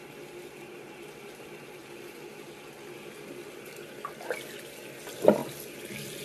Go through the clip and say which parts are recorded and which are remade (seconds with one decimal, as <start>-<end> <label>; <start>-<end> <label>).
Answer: 0.0-6.2 recorded